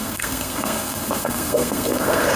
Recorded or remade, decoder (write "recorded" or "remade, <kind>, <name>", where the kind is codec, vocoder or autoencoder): remade, codec, SNAC